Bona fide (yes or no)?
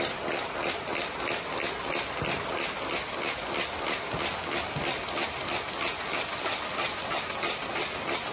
yes